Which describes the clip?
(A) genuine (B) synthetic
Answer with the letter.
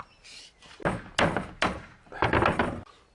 A